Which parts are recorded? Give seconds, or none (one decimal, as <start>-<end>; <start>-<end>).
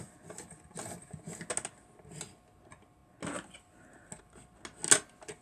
0.0-5.4